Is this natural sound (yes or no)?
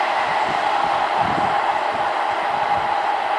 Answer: yes